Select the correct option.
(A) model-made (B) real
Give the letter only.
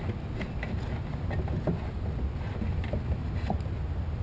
B